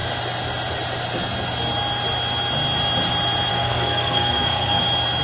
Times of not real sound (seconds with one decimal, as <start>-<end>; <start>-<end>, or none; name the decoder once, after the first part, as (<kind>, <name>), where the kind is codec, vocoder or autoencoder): 3.5-4.8 (codec, SNAC)